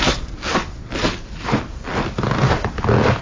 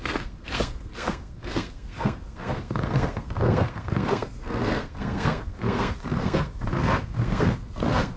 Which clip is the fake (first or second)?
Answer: second